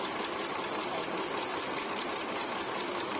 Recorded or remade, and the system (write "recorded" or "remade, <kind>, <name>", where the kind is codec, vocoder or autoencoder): remade, vocoder, BigVGAN v2